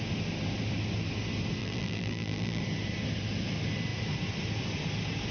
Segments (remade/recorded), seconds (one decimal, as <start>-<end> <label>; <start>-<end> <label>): 0.0-1.6 recorded; 1.6-2.6 remade; 2.6-5.3 recorded